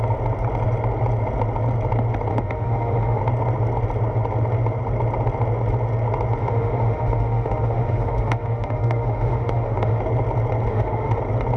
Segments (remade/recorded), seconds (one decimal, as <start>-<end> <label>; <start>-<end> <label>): 0.0-2.3 recorded; 2.3-3.2 remade; 3.2-6.4 recorded; 6.4-10.0 remade; 10.0-10.7 recorded; 10.7-11.2 remade; 11.2-11.6 recorded